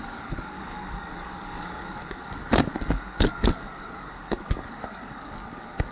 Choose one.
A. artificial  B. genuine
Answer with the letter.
A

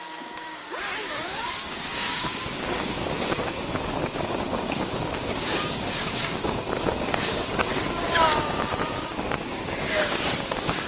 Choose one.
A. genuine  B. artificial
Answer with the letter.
B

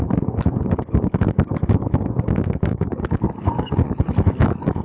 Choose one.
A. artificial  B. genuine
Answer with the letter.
A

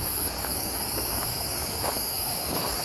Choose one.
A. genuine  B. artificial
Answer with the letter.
B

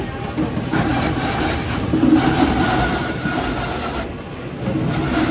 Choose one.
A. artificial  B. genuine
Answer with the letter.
B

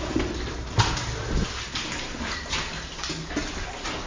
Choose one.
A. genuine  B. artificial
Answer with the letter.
A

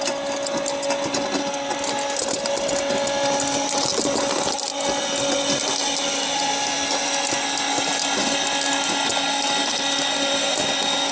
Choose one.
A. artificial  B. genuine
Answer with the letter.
B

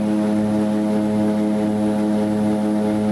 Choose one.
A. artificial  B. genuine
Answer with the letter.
B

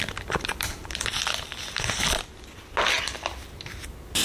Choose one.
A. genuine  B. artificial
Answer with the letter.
A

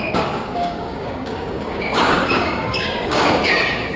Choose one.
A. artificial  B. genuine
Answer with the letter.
A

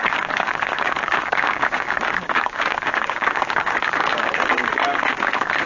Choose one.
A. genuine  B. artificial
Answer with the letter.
B